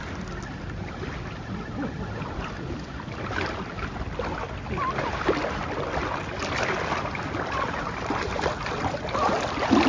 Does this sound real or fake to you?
real